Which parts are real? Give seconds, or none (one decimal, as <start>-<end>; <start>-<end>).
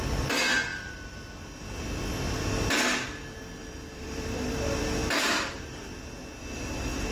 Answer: 0.0-0.7; 1.4-3.6; 5.5-6.4